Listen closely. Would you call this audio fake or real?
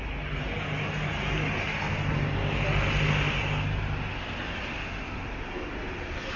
real